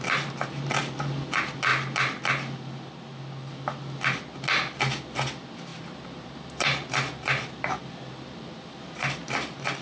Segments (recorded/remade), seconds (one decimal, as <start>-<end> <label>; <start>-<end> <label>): 0.0-5.7 recorded; 5.7-9.3 remade; 9.3-9.8 recorded

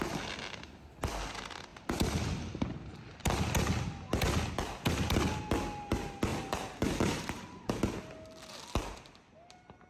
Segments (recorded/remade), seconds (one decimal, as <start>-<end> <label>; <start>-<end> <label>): 0.0-6.3 recorded; 6.3-7.7 remade; 7.7-8.5 recorded; 8.5-9.1 remade; 9.1-9.9 recorded